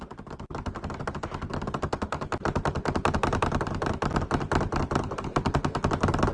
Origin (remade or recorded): recorded